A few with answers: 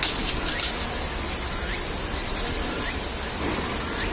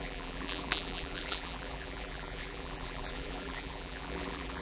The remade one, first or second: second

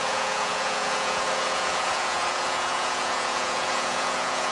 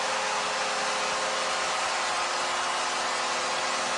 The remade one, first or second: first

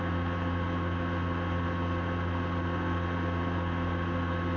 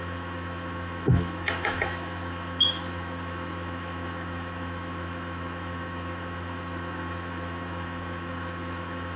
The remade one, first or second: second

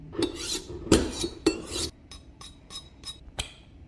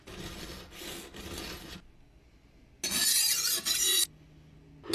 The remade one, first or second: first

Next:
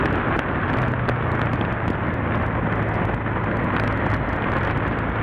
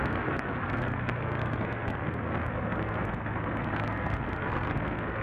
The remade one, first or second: second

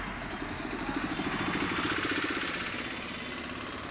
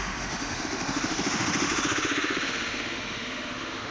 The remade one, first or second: second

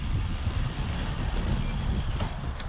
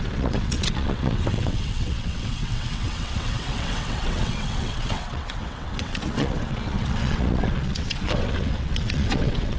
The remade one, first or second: second